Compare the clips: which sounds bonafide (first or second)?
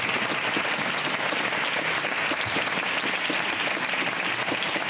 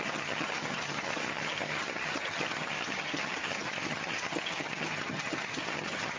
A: first